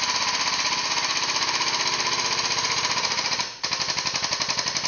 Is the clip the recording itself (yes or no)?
no